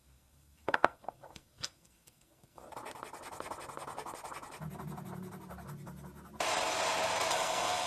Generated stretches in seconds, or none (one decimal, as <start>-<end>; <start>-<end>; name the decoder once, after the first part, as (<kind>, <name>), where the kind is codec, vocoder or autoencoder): 0.0-2.6 (codec, SNAC); 7.3-7.9